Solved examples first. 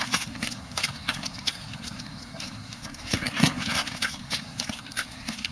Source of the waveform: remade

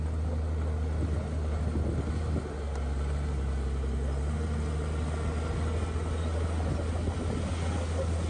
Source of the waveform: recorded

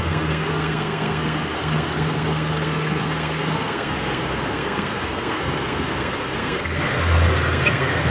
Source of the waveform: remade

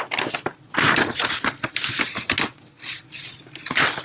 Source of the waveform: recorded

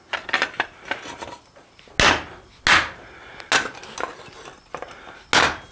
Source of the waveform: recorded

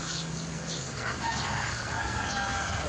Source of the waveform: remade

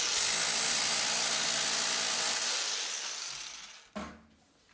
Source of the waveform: recorded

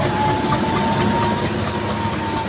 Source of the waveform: recorded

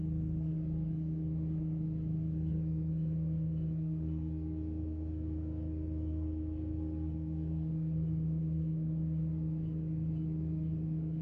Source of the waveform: remade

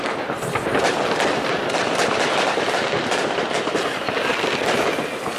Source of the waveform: recorded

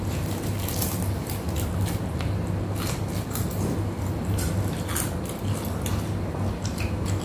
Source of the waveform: recorded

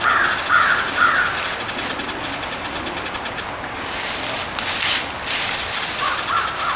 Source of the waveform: recorded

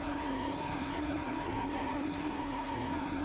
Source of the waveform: remade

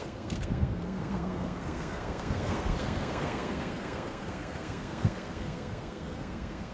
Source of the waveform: remade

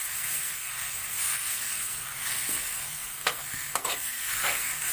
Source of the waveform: remade